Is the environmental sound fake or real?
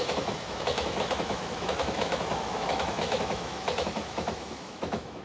fake